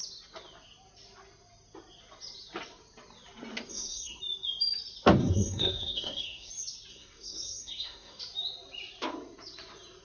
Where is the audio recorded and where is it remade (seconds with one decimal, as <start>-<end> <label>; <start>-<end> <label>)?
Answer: 0.0-3.7 recorded; 3.7-4.2 remade; 4.2-5.2 recorded; 5.2-6.5 remade; 6.5-6.9 recorded; 6.9-8.2 remade; 8.2-10.0 recorded